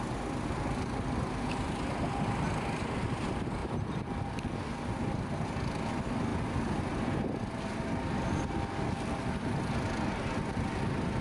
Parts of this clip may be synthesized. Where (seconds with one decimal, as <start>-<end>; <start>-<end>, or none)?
3.6-4.2; 6.3-7.6